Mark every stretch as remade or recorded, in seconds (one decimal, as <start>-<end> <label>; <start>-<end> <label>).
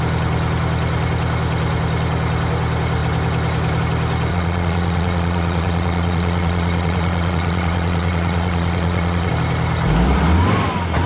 0.0-4.3 recorded; 4.3-9.3 remade; 9.3-11.1 recorded